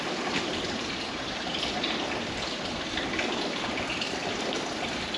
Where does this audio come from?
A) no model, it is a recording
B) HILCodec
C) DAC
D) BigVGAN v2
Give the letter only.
D